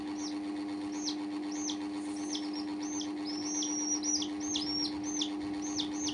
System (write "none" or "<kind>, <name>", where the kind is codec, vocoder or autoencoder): none